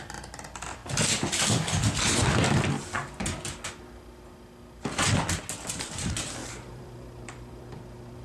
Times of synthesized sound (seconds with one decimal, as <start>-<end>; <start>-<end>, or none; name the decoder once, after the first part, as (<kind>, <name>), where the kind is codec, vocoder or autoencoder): 0.0-0.8 (vocoder, BigVGAN v2); 5.7-8.2